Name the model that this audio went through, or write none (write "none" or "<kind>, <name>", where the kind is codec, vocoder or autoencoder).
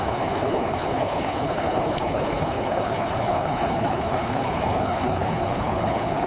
codec, HILCodec